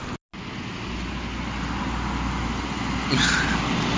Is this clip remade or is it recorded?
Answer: recorded